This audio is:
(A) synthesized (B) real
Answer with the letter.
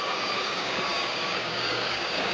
A